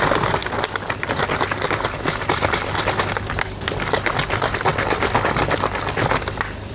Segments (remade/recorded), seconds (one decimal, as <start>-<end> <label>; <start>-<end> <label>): 0.0-6.7 recorded

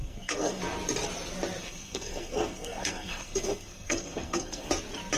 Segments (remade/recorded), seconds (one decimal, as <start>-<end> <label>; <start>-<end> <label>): 0.0-0.6 remade; 0.6-1.6 recorded; 1.6-4.7 remade; 4.7-5.2 recorded

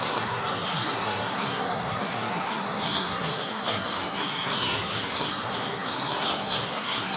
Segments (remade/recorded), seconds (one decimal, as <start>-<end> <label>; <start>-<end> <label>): 0.0-7.2 remade

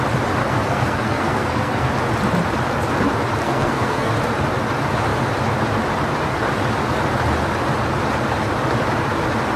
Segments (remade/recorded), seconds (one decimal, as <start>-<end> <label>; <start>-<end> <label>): 0.0-0.4 recorded; 0.4-1.9 remade; 1.9-3.4 recorded; 3.4-4.1 remade; 4.1-9.6 recorded